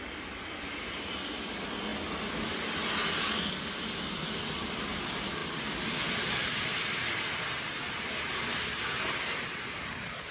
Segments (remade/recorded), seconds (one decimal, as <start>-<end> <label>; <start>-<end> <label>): 0.0-10.3 recorded